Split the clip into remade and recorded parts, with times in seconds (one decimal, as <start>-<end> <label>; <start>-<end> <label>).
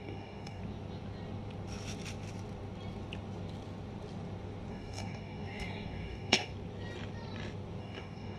0.0-0.6 remade; 0.6-4.7 recorded; 4.7-6.5 remade; 6.5-7.8 recorded; 7.8-8.4 remade